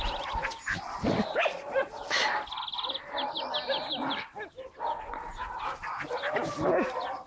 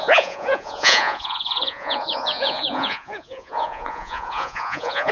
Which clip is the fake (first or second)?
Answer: second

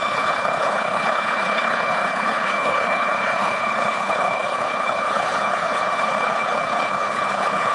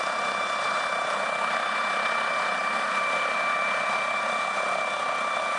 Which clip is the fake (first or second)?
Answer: first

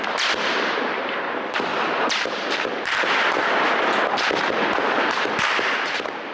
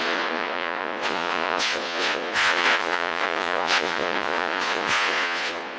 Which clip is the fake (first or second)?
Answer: second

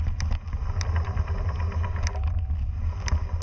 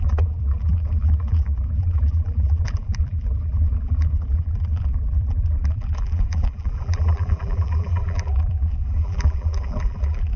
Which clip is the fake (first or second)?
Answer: second